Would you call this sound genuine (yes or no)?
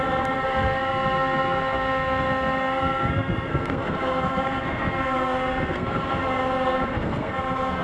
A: no